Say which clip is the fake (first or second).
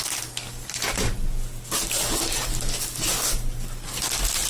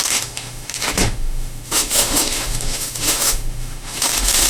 second